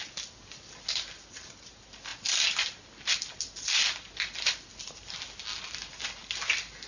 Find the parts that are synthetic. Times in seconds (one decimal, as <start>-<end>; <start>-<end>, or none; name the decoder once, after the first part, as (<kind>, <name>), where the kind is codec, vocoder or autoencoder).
none

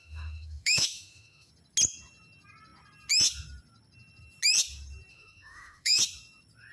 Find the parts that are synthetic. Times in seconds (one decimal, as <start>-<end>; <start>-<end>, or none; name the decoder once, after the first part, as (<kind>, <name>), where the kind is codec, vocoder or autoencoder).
0.0-1.5 (autoencoder, DAC-VAE); 5.1-6.0

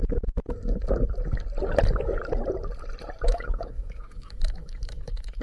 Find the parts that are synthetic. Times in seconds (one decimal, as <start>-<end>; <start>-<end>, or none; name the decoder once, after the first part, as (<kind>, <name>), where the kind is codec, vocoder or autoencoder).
3.3-5.4 (autoencoder, DAC-VAE)

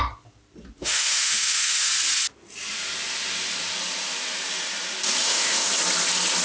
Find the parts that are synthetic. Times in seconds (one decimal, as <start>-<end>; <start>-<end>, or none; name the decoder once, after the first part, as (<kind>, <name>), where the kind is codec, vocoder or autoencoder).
0.8-1.9 (autoencoder, DAC-VAE); 5.2-5.7